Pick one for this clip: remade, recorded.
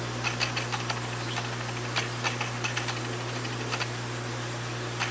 recorded